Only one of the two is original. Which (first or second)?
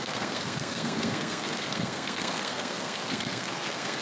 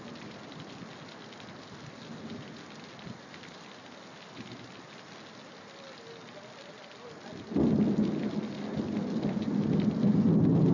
second